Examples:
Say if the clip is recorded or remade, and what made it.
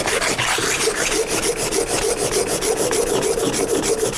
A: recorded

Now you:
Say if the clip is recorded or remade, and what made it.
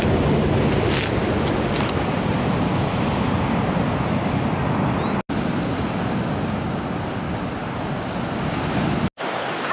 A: recorded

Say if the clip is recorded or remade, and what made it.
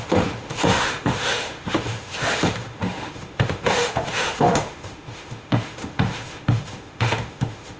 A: remade, autoencoder, DAC-VAE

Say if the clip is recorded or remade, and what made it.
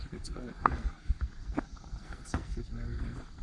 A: remade, codec, SNAC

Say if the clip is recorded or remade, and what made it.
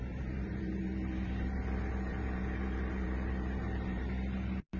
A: remade, vocoder, BigVGAN v2